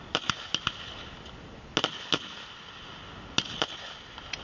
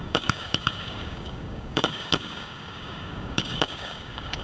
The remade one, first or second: second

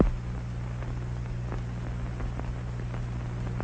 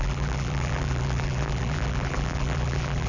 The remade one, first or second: second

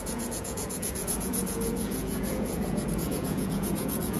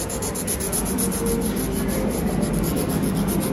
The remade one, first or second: first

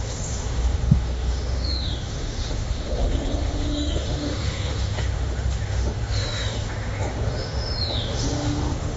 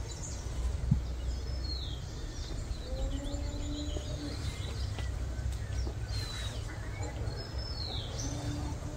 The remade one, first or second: first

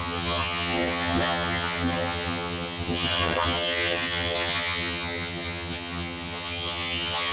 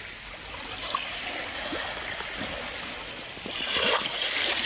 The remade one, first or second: first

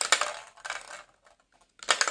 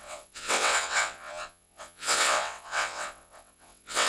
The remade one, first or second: second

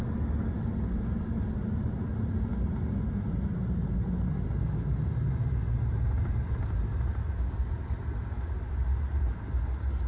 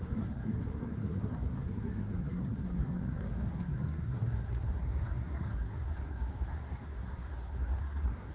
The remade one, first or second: second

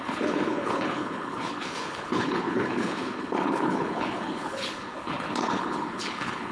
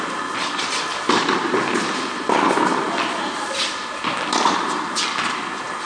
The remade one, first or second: first